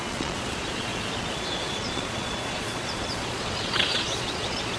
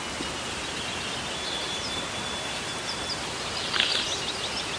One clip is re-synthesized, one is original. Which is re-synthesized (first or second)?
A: first